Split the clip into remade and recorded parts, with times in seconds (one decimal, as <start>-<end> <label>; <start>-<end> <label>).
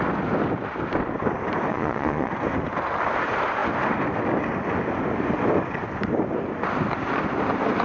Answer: 0.0-1.7 recorded; 1.7-2.3 remade; 2.3-7.8 recorded